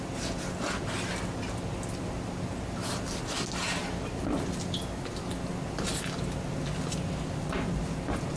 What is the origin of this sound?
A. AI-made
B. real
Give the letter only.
B